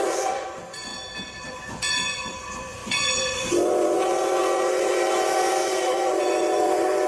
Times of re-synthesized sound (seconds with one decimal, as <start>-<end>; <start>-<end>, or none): 0.0-0.9; 1.5-7.1